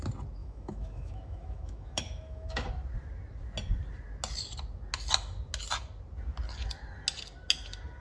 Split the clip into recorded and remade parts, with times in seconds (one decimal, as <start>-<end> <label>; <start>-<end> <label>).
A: 0.0-0.4 recorded; 0.4-2.7 remade; 2.7-8.0 recorded